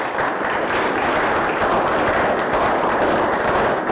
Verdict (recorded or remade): recorded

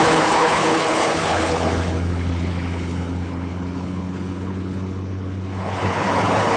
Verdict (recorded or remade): remade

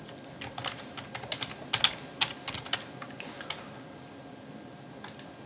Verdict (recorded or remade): recorded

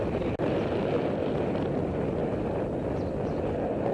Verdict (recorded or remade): recorded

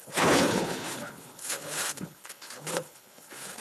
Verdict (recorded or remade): remade